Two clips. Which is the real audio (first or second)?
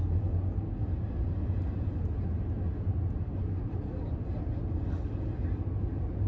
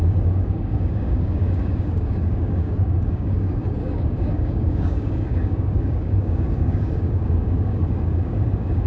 first